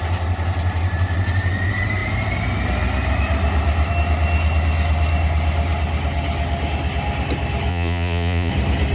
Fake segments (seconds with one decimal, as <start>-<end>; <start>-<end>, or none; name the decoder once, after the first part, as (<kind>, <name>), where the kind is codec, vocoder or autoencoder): 7.7-8.5 (vocoder, Vocos)